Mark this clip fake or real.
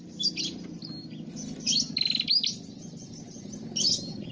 real